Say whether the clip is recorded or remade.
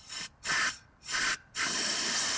remade